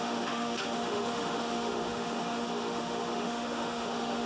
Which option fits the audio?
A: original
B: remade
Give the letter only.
B